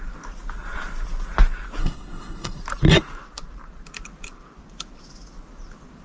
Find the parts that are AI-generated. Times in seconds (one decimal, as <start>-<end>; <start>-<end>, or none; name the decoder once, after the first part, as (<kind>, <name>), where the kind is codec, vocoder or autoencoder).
1.8-2.6 (codec, SNAC)